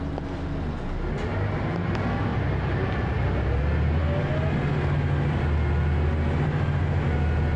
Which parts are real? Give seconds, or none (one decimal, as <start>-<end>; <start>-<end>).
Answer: 0.0-2.3; 3.6-7.6

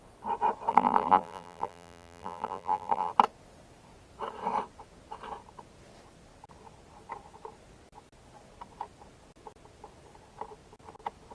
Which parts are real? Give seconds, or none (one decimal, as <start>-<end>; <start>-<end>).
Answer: 0.0-0.7; 3.1-11.3

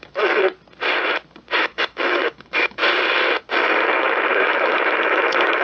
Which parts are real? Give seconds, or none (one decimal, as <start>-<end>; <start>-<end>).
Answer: 0.4-1.6; 2.8-4.0

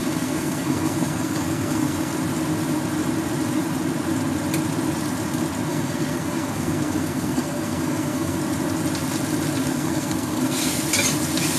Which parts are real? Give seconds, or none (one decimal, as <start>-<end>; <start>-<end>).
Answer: 2.1-5.7; 8.4-9.7; 10.8-11.6

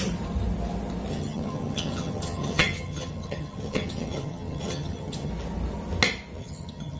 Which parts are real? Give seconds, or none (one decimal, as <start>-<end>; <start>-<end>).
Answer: 0.0-1.1; 5.3-6.4

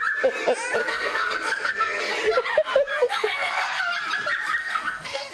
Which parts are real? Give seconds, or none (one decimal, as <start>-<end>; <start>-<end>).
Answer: 0.0-0.8; 2.0-2.9; 3.8-4.6

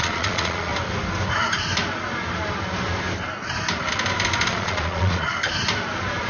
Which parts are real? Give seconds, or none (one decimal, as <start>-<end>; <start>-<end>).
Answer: 0.7-4.5; 5.3-6.3